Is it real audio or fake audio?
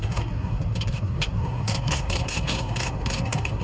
fake